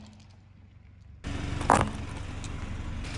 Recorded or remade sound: recorded